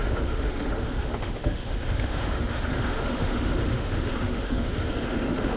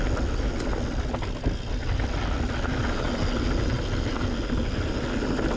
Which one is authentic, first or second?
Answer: second